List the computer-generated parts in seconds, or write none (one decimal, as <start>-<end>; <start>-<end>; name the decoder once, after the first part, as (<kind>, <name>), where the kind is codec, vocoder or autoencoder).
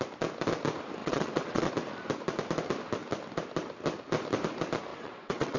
1.0-1.7 (vocoder, WaveNeXt); 4.9-5.6